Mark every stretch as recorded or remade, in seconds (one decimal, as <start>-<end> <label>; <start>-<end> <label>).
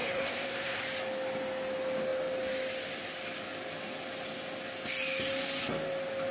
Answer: 0.0-0.8 remade; 0.8-6.3 recorded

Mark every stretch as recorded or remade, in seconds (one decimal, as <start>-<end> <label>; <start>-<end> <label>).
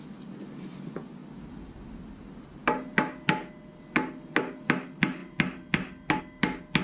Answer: 0.0-6.8 recorded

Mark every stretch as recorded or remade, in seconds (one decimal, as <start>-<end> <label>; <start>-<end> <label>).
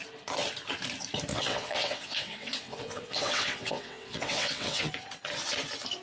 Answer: 0.0-1.3 recorded; 1.3-4.9 remade; 4.9-6.0 recorded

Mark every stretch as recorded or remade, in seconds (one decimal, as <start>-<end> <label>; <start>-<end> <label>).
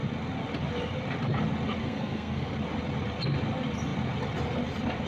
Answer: 0.0-1.8 recorded; 1.8-2.5 remade; 2.5-5.1 recorded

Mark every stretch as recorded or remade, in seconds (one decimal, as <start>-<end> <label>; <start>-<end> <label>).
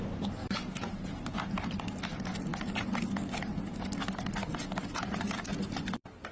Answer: 0.0-0.4 recorded; 0.4-1.3 remade; 1.3-6.3 recorded